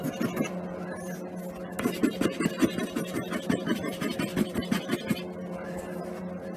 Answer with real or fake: real